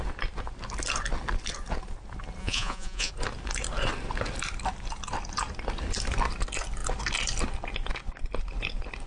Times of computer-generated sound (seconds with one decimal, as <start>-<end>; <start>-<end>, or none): 2.4-3.1